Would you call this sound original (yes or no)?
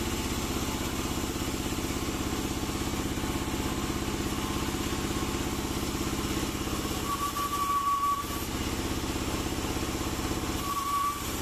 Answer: yes